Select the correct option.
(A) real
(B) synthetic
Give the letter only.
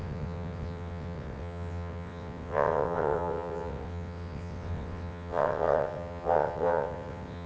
B